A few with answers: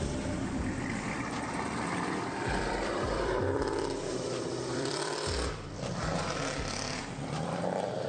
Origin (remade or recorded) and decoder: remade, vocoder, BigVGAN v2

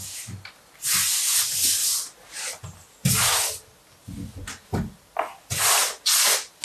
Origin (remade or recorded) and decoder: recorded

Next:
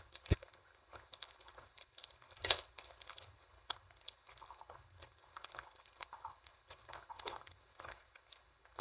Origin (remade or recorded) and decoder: remade, codec, HILCodec